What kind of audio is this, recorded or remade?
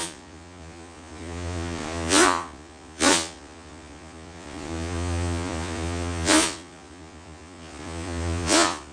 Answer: remade